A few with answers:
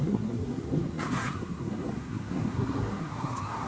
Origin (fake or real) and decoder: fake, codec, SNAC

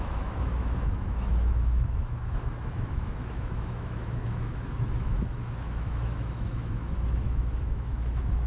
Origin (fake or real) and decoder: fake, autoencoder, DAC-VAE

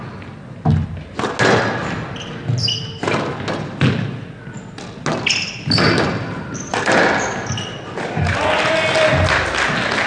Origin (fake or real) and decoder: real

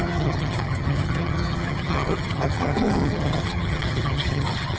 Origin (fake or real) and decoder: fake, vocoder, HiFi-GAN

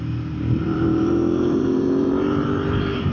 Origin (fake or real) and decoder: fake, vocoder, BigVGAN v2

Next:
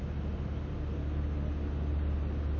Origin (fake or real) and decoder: real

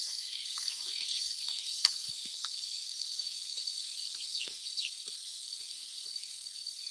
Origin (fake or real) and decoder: fake, codec, SNAC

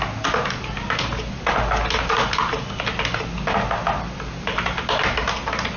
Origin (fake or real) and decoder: real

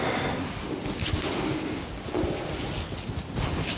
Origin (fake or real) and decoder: real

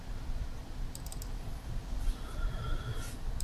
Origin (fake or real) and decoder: fake, vocoder, BigVGAN v2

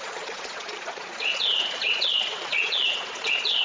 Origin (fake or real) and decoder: fake, vocoder, Vocos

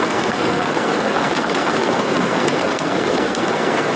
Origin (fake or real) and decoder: fake, codec, SNAC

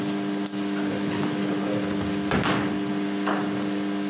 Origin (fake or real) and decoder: real